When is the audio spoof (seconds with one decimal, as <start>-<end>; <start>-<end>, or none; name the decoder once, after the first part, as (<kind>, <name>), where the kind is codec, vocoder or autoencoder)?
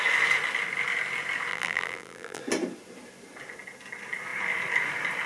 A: 1.5-2.4 (vocoder, BigVGAN v2)